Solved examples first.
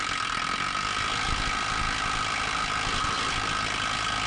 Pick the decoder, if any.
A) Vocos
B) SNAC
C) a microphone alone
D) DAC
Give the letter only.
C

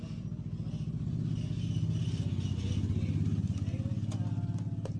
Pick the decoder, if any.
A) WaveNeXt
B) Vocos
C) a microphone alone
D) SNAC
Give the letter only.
C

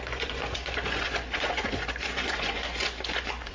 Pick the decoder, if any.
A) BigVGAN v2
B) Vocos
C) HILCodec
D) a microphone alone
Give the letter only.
B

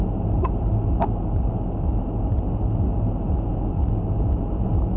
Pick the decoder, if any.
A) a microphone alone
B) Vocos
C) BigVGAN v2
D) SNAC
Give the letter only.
A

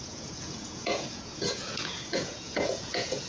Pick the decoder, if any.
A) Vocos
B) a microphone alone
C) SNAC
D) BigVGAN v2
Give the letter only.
A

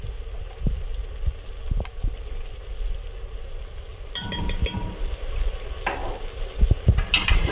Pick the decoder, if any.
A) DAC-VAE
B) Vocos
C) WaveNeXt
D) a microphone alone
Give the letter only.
D